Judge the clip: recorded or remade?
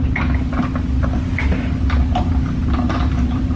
recorded